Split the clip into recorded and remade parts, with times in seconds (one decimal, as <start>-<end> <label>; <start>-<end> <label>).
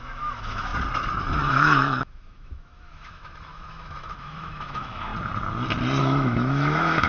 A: 0.0-0.7 remade; 0.7-1.5 recorded; 1.5-5.1 remade; 5.1-6.0 recorded; 6.0-7.1 remade